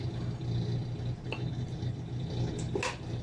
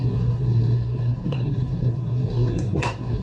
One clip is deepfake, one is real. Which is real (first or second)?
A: first